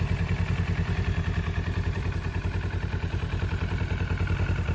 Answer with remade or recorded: recorded